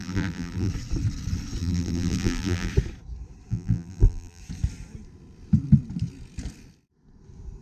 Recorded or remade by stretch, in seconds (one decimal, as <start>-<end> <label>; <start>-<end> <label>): 0.0-0.7 remade; 0.7-1.6 recorded; 1.6-2.7 remade; 2.7-3.5 recorded; 3.5-4.4 remade; 4.4-7.6 recorded